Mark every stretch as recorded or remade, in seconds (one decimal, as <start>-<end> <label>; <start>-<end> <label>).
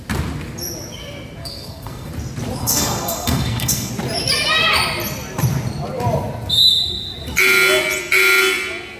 0.0-1.4 recorded; 1.4-2.1 remade; 2.1-2.6 recorded; 2.6-3.9 remade; 3.9-9.0 recorded